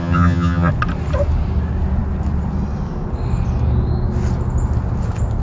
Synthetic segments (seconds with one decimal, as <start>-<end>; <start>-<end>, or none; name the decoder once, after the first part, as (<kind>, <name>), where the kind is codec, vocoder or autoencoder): 0.0-0.7 (vocoder, HiFi-GAN)